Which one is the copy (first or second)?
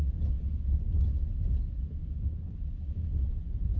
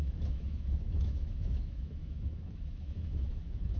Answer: second